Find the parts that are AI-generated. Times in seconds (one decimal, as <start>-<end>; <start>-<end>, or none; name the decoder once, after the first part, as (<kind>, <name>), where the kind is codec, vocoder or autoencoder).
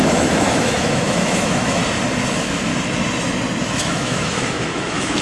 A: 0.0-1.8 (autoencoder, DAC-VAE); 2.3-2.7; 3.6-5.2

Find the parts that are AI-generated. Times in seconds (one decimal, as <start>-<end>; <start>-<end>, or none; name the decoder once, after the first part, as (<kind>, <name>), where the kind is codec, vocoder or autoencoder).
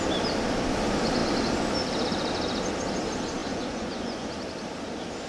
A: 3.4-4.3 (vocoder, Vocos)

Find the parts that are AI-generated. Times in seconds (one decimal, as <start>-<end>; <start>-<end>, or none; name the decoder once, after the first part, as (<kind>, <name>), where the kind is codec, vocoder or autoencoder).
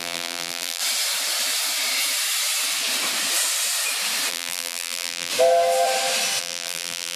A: 0.0-0.8 (vocoder, BigVGAN v2); 4.3-5.3; 6.4-7.2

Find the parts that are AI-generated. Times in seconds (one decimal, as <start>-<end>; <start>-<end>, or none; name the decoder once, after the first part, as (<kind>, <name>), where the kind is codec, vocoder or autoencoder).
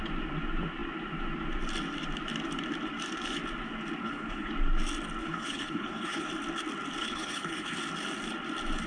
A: 4.0-4.5 (codec, HILCodec); 5.2-6.3; 7.0-7.8